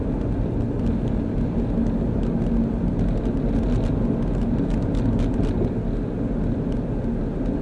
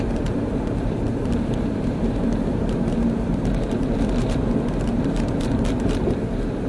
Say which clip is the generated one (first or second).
second